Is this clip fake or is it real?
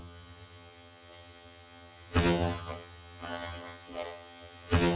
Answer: fake